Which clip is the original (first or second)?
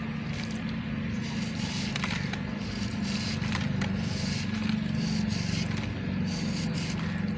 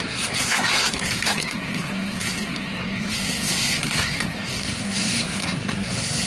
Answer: first